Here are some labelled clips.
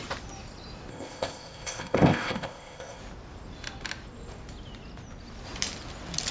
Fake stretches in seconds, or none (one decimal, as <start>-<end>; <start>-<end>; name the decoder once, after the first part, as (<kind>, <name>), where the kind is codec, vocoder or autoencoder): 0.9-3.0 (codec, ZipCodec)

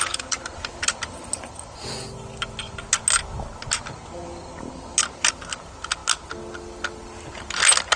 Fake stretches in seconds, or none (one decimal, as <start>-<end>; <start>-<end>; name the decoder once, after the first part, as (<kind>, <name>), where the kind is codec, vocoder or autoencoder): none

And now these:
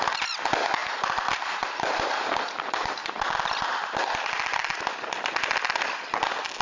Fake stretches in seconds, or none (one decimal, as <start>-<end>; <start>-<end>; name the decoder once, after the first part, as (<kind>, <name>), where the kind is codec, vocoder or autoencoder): 0.8-4.8 (vocoder, BigVGAN v2)

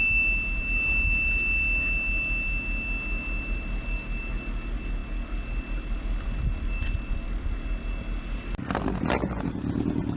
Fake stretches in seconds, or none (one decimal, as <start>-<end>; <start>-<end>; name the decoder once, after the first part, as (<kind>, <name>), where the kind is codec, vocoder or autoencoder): none

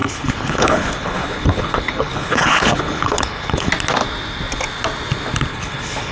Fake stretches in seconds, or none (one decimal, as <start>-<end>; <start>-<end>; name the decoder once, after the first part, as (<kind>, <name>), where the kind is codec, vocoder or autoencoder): 0.0-3.7 (codec, HILCodec); 5.5-6.1

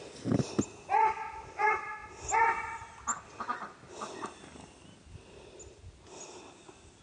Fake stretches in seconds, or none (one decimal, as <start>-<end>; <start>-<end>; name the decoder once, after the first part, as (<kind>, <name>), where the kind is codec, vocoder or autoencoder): none

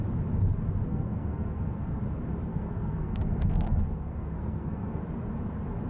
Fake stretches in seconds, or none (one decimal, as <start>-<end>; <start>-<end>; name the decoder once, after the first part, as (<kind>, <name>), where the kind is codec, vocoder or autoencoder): 0.9-2.0 (codec, SNAC); 2.5-5.0

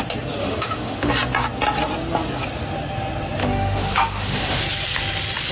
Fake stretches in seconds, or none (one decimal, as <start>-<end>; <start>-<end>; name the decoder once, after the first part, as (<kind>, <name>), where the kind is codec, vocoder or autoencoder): 0.4-1.1 (autoencoder, DAC-VAE); 3.4-4.6